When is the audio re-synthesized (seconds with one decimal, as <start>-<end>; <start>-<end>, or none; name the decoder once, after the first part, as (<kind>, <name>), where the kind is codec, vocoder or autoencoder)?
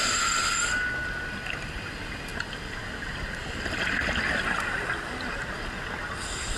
none